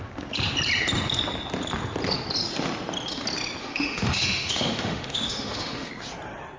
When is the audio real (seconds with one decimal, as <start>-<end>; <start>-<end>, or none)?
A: 0.0-3.6; 5.9-6.6